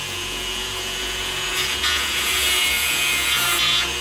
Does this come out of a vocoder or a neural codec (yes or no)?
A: yes